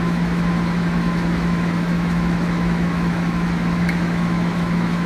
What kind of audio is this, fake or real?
fake